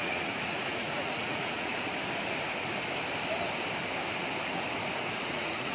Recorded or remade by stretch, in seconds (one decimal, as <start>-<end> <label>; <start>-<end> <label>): 0.0-1.7 remade; 1.7-5.1 recorded; 5.1-5.7 remade